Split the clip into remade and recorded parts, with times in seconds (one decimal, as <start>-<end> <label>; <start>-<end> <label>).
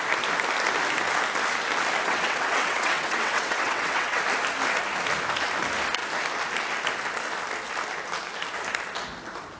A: 0.0-2.0 recorded; 2.0-4.2 remade; 4.2-9.6 recorded